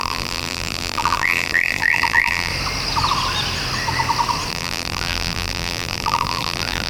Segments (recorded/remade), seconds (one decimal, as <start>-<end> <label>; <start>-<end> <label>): 0.0-2.5 remade; 2.5-4.5 recorded; 4.5-6.9 remade